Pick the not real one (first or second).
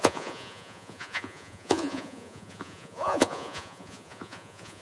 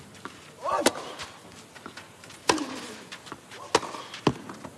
first